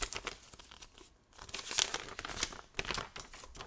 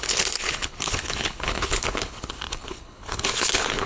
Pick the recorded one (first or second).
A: first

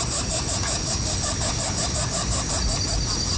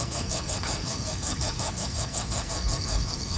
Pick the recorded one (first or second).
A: first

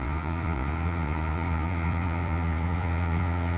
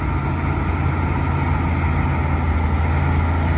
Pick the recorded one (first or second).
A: second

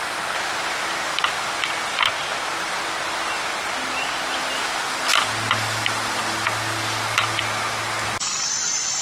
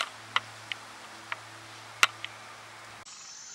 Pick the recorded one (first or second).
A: second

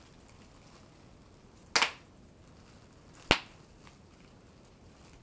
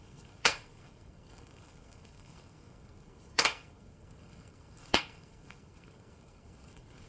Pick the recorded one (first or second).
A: first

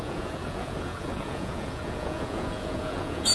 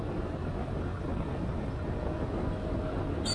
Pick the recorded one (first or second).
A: second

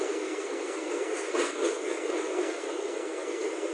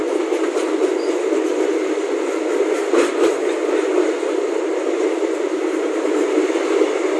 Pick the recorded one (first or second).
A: second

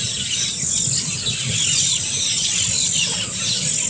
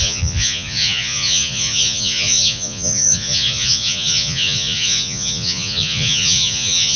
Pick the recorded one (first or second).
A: first